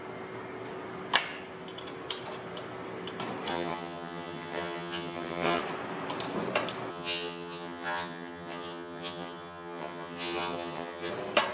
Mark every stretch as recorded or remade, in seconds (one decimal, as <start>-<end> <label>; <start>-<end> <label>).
0.0-3.5 recorded; 3.5-5.6 remade; 5.6-6.9 recorded; 6.9-11.1 remade; 11.1-11.5 recorded